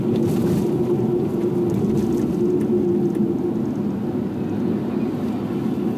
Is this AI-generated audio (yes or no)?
no